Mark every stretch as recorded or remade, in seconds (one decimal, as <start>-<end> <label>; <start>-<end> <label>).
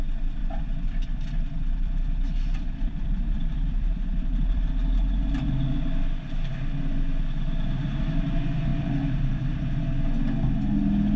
0.0-0.4 recorded; 0.4-4.7 remade; 4.7-8.7 recorded; 8.7-9.3 remade; 9.3-11.2 recorded